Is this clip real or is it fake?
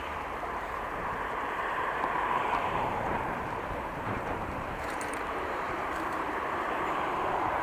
fake